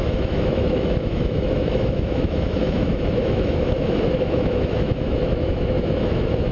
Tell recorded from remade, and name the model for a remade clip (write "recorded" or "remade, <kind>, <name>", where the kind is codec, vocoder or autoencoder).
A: remade, autoencoder, DAC-VAE